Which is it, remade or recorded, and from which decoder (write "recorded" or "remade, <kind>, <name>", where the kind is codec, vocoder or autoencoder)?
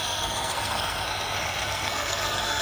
remade, codec, SNAC